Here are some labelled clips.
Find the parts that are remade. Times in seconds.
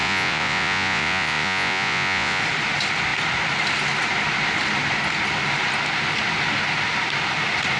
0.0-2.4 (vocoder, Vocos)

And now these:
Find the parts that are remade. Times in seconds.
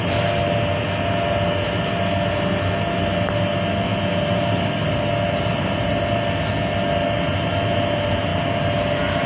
none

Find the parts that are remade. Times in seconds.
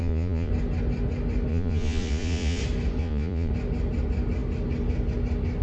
0.0-0.5 (vocoder, Vocos); 1.5-2.6; 3.0-3.5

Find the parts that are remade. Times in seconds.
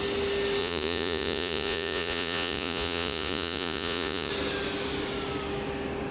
0.6-4.3 (vocoder, Vocos)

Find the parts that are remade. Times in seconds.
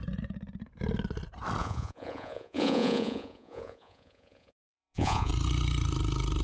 1.6-5.3 (vocoder, Vocos)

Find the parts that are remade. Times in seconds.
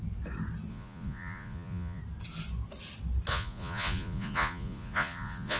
0.7-2.0 (vocoder, Vocos); 3.3-5.6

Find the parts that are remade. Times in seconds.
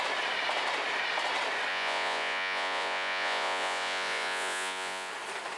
1.7-5.1 (vocoder, Vocos)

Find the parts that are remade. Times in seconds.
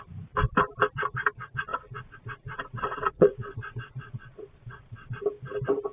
1.7-5.2 (vocoder, Vocos)